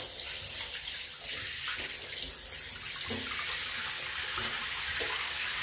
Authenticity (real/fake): real